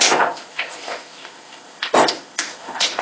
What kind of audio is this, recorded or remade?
remade